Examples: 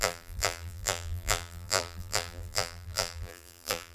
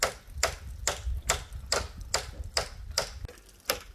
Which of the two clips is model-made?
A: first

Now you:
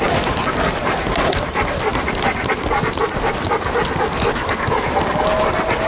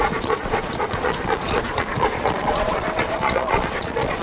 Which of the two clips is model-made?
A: second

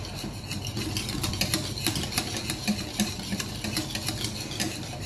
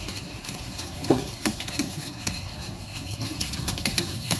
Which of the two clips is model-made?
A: second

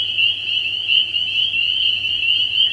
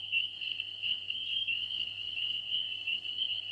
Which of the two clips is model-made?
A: second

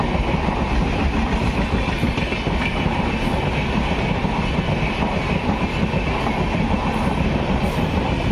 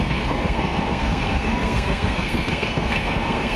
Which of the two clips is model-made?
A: second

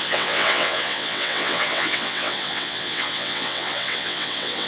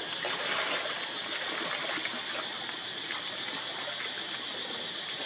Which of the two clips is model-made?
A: first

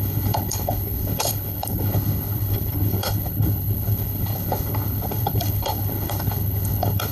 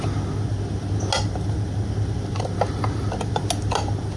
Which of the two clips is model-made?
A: first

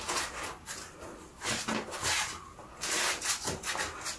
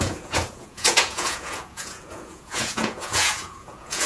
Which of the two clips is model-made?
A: second